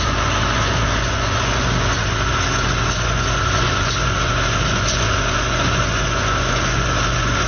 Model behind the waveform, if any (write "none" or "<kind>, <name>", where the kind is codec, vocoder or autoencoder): vocoder, Vocos